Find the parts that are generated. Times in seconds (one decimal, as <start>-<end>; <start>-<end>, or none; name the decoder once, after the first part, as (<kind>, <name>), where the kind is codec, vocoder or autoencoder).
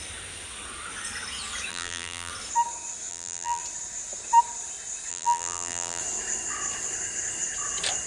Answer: 1.7-2.3 (vocoder, BigVGAN v2); 3.1-3.6; 5.1-6.0